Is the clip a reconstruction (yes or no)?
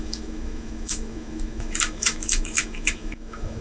yes